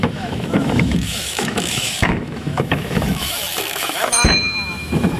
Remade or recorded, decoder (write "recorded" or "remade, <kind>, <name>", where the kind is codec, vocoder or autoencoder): remade, autoencoder, DAC-VAE